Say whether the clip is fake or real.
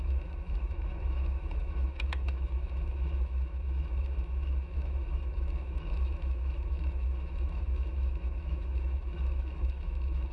fake